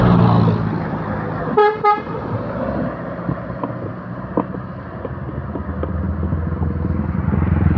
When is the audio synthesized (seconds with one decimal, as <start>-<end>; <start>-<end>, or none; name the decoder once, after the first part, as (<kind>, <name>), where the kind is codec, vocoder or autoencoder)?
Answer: none